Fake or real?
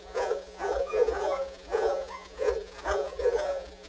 fake